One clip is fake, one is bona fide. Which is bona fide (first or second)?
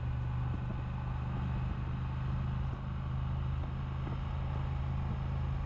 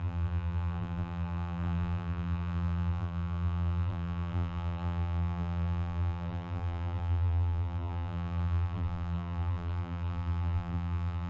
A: first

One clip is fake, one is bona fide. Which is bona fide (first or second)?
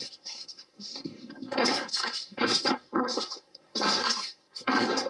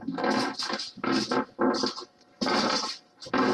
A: second